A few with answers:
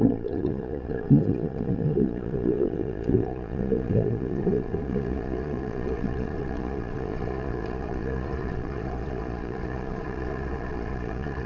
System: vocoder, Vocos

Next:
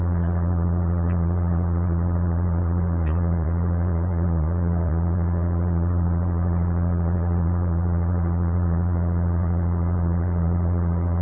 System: vocoder, Vocos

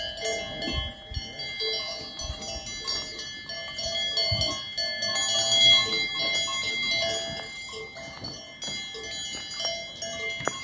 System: none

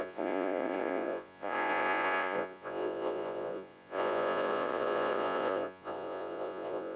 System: vocoder, Vocos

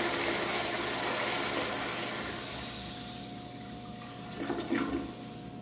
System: none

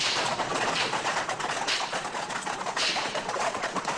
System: vocoder, Vocos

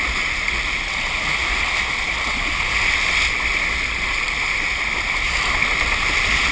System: none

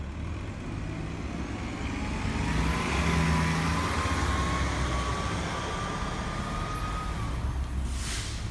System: none